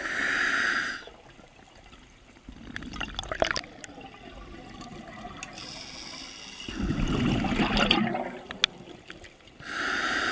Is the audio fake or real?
real